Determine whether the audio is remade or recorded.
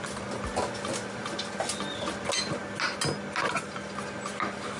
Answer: recorded